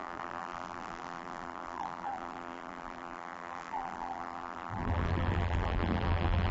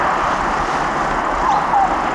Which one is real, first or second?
second